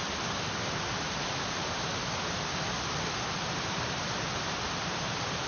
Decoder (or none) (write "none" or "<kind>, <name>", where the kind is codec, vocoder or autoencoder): vocoder, BigVGAN v2